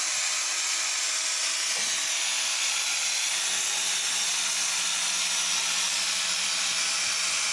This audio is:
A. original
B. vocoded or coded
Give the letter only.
A